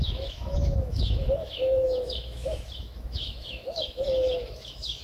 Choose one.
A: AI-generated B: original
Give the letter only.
A